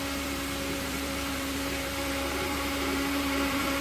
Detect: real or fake fake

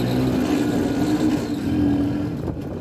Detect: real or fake real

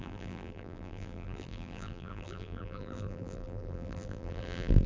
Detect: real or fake fake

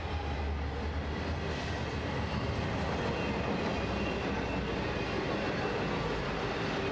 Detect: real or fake real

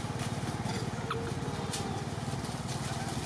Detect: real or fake real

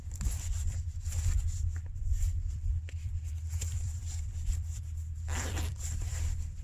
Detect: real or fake fake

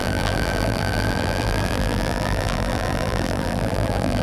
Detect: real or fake fake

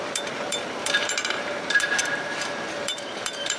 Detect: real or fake fake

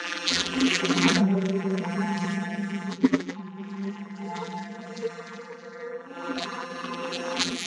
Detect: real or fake fake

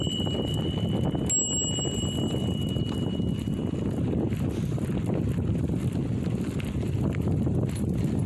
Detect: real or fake real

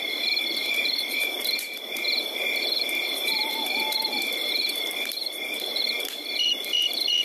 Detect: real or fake fake